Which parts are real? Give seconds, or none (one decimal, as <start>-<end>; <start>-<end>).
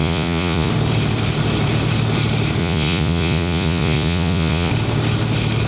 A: 0.7-2.6; 4.7-5.7